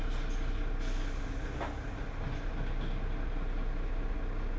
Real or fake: real